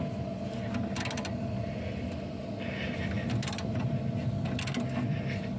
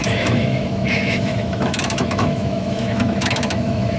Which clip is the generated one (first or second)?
second